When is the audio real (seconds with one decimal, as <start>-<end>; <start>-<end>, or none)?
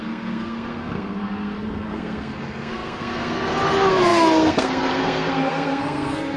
none